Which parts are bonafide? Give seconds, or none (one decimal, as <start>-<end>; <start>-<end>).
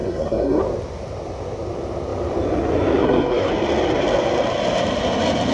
0.6-3.0; 3.5-5.5